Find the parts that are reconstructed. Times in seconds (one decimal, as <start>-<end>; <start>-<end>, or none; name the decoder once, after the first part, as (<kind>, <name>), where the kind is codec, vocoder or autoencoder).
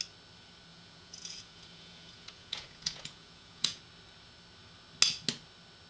0.7-3.8 (vocoder, Vocos)